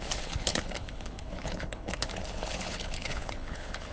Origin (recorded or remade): remade